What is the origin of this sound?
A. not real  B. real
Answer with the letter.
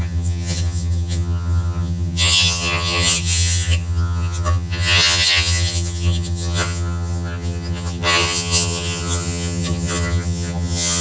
A